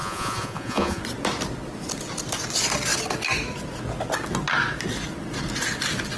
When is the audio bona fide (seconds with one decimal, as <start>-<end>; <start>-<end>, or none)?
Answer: 1.0-6.2